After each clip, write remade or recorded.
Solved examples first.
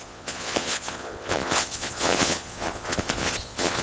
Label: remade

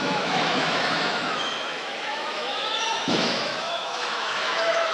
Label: remade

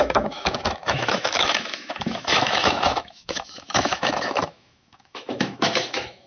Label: remade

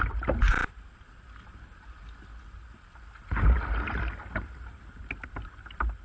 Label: recorded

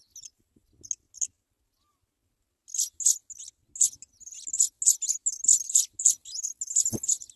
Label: recorded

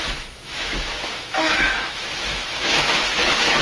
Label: remade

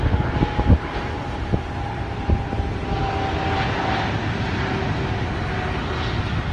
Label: recorded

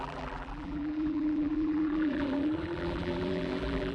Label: remade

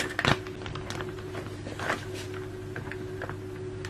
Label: recorded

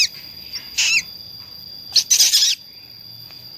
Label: recorded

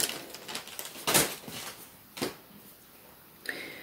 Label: recorded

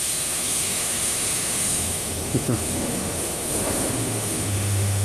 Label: remade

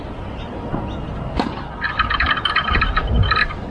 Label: recorded